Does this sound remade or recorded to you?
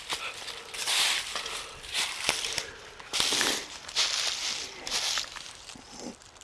recorded